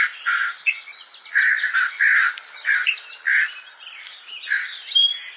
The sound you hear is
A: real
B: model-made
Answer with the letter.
A